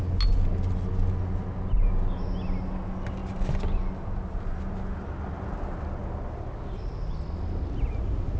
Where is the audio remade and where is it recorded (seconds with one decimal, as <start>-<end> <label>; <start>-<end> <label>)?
0.0-8.4 recorded